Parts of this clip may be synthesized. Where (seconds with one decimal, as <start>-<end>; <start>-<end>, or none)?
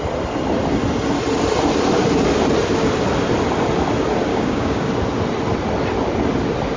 4.3-4.9